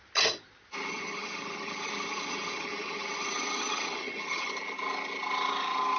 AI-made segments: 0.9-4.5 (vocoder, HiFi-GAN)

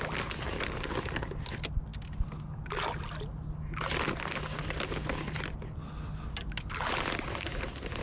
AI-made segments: none

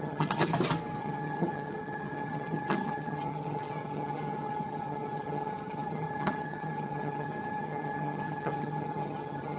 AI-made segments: 0.0-0.5 (vocoder, HiFi-GAN); 1.0-9.6

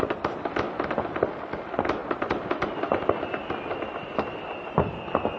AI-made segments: none

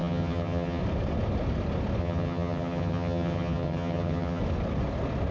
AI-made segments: 0.0-0.8 (vocoder, HiFi-GAN); 2.0-4.4

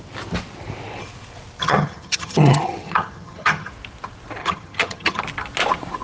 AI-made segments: 1.6-3.7 (vocoder, HiFi-GAN); 4.4-5.2